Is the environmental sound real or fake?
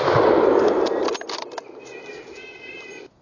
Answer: real